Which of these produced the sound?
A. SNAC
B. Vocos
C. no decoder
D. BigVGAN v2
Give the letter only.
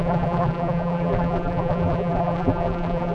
D